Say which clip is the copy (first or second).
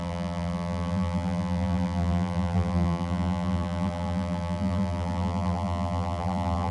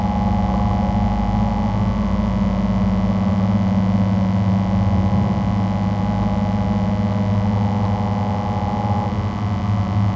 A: first